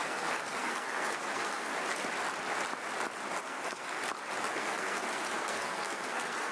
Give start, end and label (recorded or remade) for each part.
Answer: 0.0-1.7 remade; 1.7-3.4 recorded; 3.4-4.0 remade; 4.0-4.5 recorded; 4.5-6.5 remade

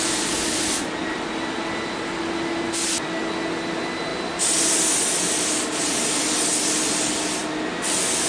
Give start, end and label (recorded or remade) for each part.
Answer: 0.0-8.3 recorded